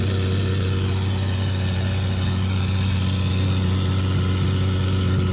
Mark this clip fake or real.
real